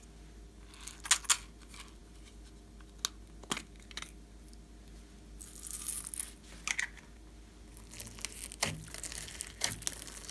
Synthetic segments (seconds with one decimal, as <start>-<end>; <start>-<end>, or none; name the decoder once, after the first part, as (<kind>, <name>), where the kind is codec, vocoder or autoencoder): none